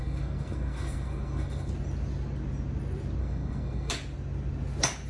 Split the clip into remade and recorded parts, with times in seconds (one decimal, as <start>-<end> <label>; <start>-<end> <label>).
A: 0.0-1.7 remade; 1.7-3.2 recorded; 3.2-3.9 remade; 3.9-5.1 recorded